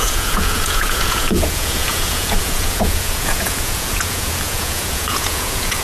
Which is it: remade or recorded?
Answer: remade